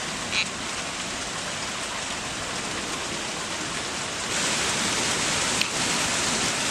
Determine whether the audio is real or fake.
real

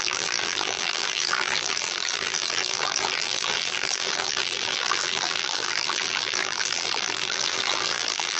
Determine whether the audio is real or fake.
fake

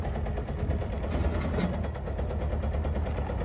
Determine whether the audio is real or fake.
real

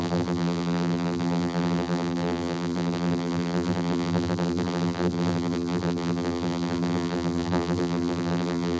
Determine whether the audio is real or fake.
fake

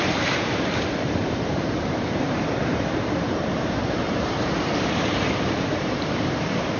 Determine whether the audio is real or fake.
fake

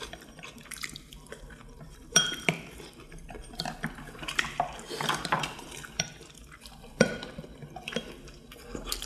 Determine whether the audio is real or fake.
fake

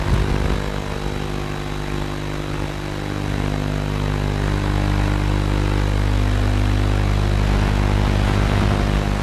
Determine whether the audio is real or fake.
real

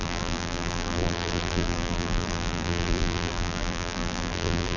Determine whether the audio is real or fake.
fake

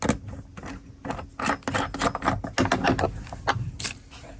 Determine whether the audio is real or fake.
real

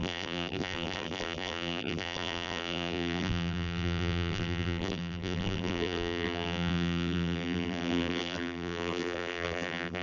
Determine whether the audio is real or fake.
fake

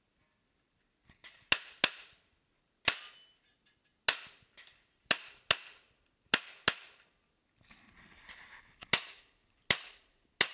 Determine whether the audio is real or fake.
real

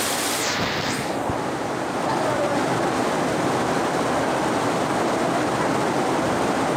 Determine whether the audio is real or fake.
real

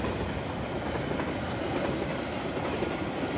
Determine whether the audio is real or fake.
real